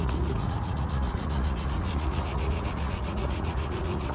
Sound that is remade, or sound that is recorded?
remade